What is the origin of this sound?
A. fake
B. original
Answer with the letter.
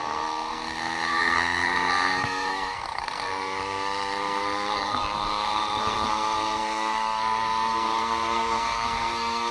A